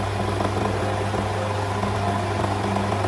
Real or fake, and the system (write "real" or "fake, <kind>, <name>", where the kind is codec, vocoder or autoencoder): real